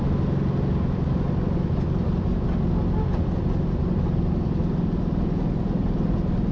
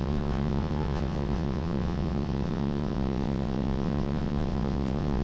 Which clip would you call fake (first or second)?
second